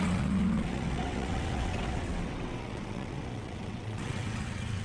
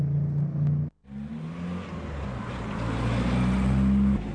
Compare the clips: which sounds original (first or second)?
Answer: second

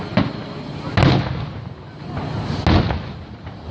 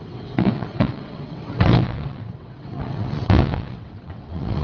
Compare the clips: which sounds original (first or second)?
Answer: first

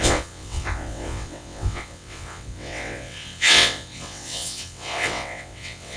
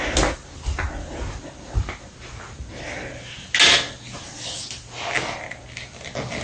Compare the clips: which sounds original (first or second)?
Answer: second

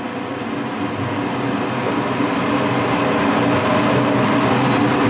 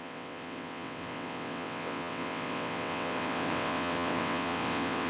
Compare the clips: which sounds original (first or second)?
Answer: first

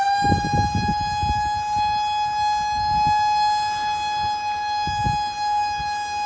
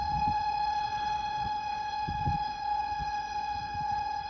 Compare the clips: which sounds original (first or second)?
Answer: first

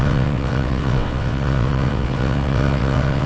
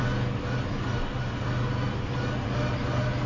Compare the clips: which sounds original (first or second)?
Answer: second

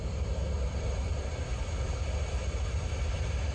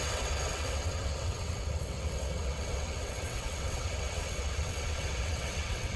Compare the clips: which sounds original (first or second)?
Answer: first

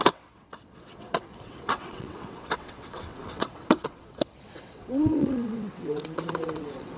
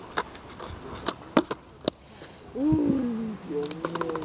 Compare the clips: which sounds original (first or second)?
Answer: second